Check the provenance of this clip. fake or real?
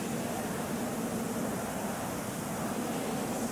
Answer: real